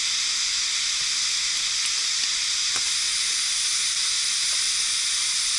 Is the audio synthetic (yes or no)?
no